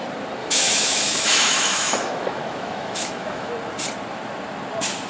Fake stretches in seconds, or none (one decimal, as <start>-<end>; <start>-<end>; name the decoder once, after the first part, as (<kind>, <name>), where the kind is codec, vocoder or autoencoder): 0.4-3.5 (autoencoder, DAC-VAE)